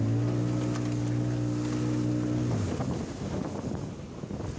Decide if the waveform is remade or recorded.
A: recorded